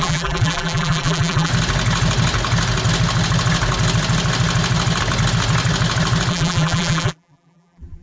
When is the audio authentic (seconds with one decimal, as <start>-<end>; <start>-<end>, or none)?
1.5-6.3